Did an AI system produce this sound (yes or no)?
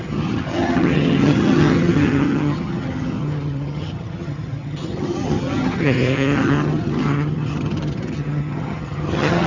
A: yes